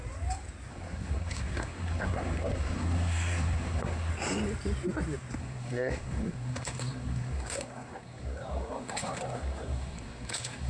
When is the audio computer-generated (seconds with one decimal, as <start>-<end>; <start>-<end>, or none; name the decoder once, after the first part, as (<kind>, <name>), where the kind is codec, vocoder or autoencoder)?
0.7-4.1 (codec, SNAC); 5.4-10.7